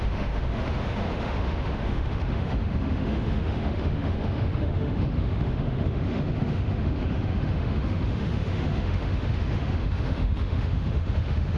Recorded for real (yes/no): no